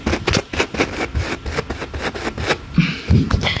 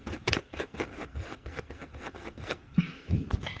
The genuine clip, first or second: first